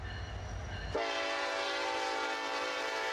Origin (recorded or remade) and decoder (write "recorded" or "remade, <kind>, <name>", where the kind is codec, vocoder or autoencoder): recorded